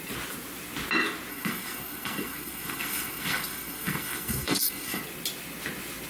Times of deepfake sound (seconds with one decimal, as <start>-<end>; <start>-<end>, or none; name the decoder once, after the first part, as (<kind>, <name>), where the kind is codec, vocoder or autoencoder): 1.3-5.0 (codec, SNAC)